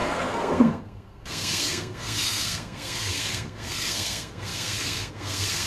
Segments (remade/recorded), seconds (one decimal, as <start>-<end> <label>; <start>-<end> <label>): 0.0-5.7 remade